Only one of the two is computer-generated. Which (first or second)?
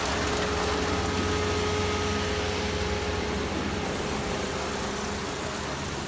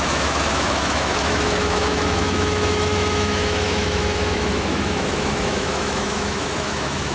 second